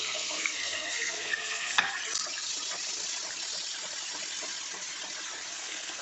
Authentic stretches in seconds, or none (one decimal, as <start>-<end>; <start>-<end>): 2.0-5.5